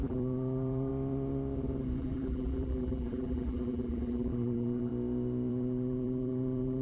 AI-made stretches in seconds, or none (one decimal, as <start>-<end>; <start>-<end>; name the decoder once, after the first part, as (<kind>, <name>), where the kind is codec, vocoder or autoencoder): 0.0-0.9 (vocoder, BigVGAN v2); 2.0-4.9; 5.5-6.8